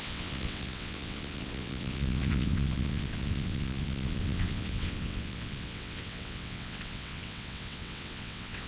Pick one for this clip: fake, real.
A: fake